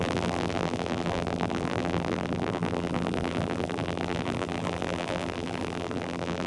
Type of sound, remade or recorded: remade